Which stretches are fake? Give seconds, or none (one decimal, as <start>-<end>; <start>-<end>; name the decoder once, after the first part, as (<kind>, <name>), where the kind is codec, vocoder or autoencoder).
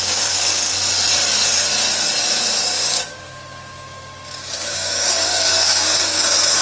0.0-0.5 (codec, DAC); 2.6-6.6